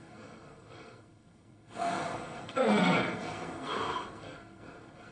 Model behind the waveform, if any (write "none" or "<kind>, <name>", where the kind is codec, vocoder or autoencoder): codec, SNAC